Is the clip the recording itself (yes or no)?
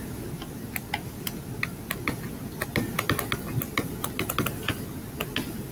yes